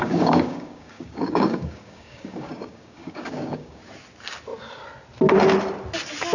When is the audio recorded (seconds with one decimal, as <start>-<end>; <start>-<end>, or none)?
3.8-6.3